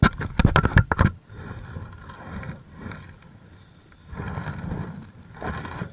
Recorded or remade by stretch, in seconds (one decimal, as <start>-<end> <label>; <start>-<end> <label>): 0.0-5.9 recorded